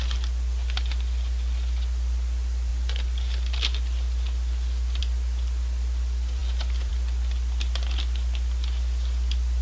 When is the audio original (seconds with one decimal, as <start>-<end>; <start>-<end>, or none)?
0.0-9.6